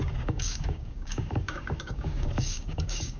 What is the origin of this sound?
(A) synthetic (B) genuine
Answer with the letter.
A